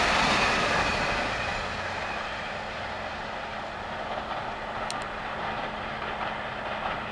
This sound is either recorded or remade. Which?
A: recorded